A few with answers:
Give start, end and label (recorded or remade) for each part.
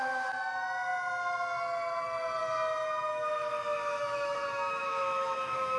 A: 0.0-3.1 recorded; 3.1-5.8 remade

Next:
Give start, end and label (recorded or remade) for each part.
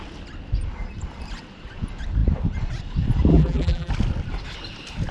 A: 0.0-3.3 recorded; 3.3-3.9 remade; 3.9-5.1 recorded